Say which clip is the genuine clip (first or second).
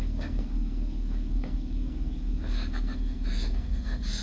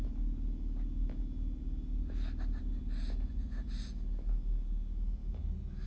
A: second